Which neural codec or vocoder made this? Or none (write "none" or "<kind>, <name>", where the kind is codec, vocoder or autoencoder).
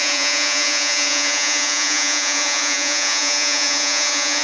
vocoder, Vocos